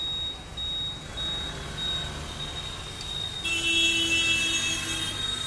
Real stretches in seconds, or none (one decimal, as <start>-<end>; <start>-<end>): 0.0-5.5